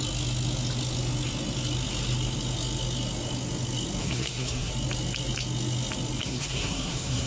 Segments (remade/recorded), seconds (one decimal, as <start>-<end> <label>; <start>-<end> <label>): 0.0-4.0 recorded; 4.0-4.7 remade; 4.7-6.2 recorded; 6.2-7.3 remade